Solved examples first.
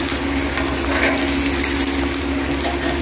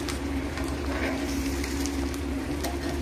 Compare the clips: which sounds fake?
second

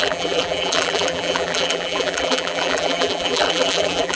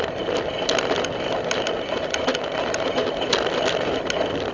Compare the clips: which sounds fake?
first